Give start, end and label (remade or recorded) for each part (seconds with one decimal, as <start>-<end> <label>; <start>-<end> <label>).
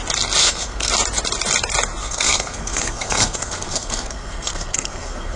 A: 0.0-0.4 recorded; 0.4-0.9 remade; 0.9-2.0 recorded; 2.0-5.4 remade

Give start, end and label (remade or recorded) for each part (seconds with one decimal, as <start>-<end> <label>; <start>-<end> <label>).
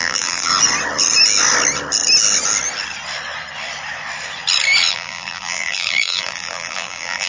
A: 0.0-0.5 remade; 0.5-4.9 recorded; 4.9-7.3 remade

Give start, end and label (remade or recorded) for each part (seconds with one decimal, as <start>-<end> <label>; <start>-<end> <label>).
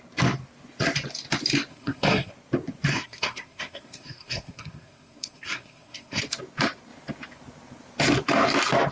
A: 0.0-1.7 recorded; 1.7-2.3 remade; 2.3-2.9 recorded; 2.9-6.2 remade; 6.2-8.9 recorded